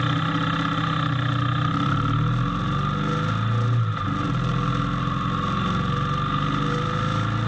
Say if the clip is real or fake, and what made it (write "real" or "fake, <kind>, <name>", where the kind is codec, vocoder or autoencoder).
real